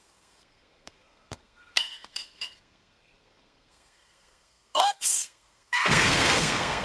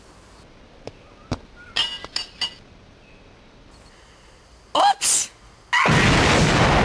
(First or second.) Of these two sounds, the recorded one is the second